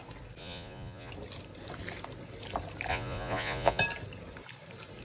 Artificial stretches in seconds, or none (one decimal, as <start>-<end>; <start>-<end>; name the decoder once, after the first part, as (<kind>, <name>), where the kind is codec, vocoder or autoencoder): 0.4-1.1 (vocoder, Vocos); 2.9-3.8